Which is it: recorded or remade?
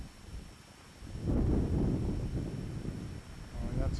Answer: recorded